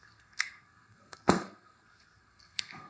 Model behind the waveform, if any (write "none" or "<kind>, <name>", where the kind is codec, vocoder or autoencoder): codec, SNAC